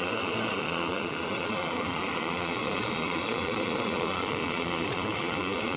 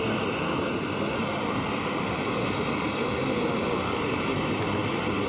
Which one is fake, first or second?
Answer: first